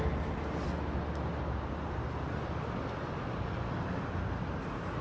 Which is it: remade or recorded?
recorded